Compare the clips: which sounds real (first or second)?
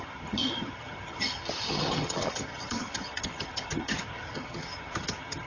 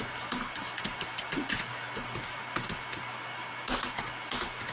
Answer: second